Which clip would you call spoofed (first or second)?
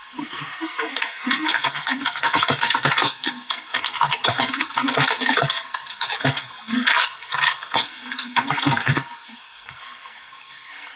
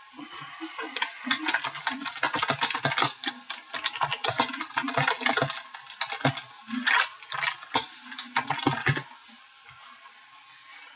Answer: first